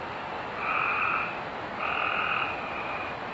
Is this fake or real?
real